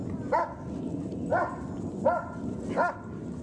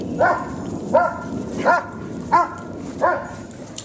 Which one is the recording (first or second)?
first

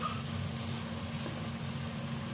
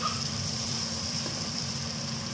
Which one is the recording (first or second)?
first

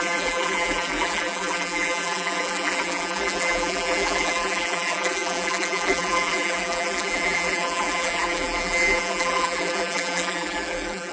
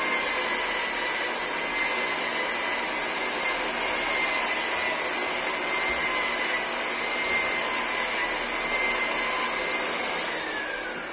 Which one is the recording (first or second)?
second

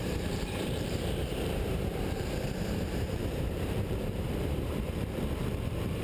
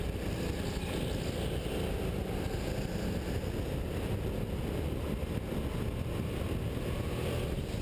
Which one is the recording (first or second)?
second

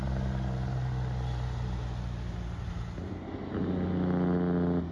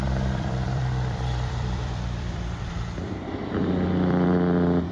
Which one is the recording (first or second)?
first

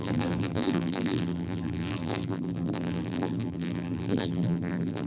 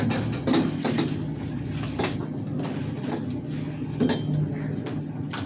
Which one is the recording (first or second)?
second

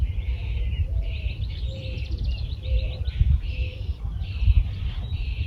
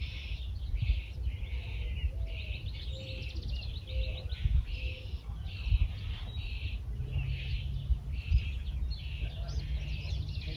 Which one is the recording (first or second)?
second